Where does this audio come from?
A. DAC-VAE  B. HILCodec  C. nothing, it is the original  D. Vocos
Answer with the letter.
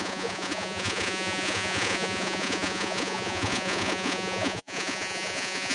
D